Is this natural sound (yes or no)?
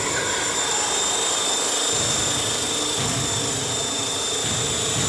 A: yes